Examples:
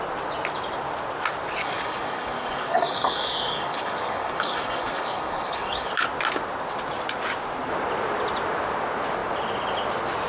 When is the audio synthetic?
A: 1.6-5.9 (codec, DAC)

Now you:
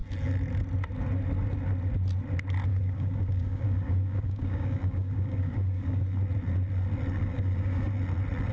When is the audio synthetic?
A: 2.7-6.0 (codec, DAC); 7.2-7.9

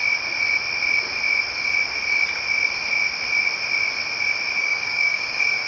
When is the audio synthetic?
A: 4.6-5.7 (codec, DAC)

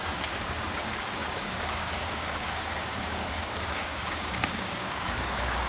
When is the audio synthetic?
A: 0.0-5.7 (codec, DAC)

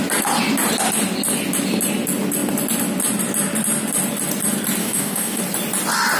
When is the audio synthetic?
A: 4.8-5.4 (codec, DAC)